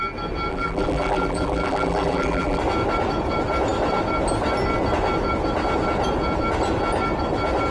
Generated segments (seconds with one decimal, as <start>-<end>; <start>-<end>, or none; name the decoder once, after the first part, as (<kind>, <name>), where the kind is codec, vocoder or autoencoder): 0.5-2.6 (vocoder, BigVGAN v2)